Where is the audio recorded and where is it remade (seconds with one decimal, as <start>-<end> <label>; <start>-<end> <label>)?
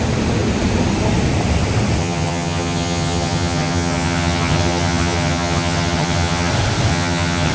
0.0-2.0 recorded; 2.0-6.5 remade; 6.5-6.9 recorded; 6.9-7.5 remade